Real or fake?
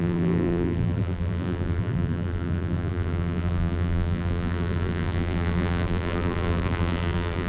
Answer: fake